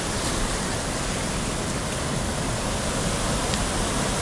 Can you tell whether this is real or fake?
real